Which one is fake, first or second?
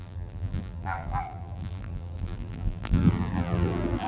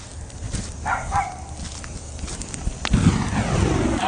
first